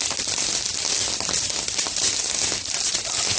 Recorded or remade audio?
recorded